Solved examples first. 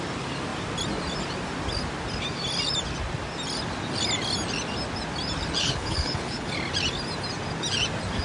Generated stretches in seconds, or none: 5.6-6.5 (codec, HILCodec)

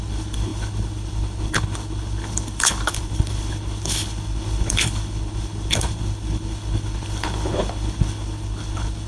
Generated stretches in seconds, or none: 0.0-9.1 (codec, HILCodec)

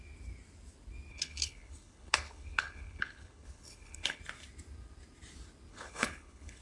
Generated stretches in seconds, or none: 1.1-4.2 (codec, HILCodec); 5.7-6.6